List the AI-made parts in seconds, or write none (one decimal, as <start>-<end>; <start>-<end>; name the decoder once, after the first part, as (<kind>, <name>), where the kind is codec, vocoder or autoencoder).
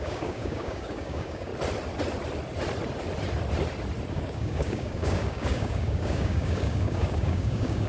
0.0-1.5 (codec, DAC); 4.1-7.9